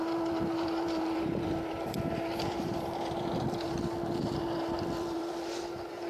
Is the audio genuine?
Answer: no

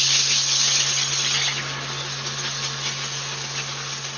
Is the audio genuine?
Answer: yes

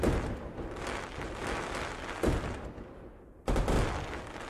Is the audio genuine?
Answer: yes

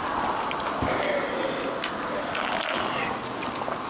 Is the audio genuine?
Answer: yes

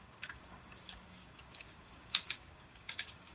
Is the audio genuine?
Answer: no